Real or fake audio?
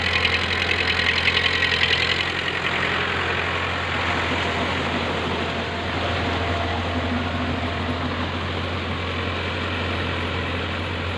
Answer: real